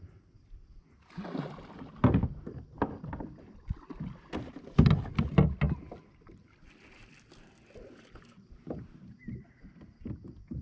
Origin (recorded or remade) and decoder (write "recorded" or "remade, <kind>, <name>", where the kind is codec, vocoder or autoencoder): recorded